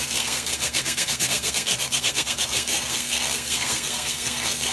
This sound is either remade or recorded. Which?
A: remade